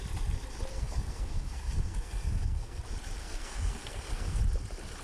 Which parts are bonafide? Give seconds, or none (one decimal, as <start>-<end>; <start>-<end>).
0.0-0.7; 2.8-3.2; 4.4-5.0